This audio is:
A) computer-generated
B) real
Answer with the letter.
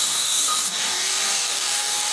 A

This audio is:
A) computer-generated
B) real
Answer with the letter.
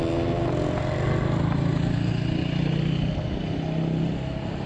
B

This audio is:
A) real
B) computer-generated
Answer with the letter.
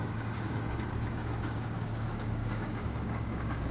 B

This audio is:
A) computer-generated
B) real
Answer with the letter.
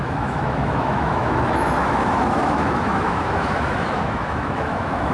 A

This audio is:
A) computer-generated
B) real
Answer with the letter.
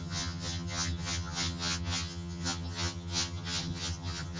A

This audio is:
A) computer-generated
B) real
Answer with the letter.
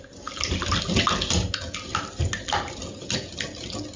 B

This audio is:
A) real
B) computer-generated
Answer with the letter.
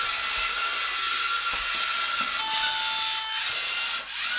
A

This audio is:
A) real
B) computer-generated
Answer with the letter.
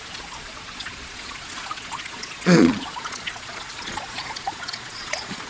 B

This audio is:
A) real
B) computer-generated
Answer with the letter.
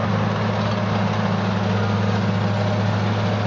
A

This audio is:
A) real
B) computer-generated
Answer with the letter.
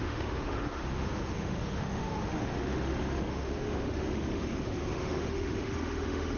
B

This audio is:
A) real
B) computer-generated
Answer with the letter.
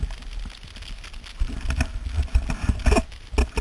A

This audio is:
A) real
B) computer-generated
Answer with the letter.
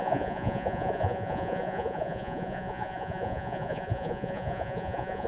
B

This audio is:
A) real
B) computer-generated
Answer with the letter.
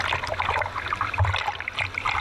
A